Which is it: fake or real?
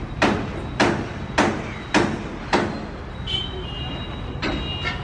real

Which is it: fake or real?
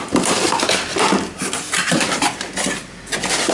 fake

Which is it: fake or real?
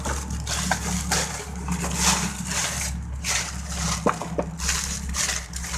real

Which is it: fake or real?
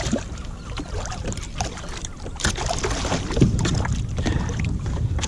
fake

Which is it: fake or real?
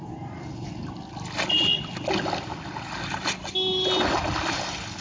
real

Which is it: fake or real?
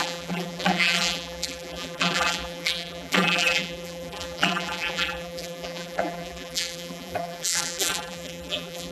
fake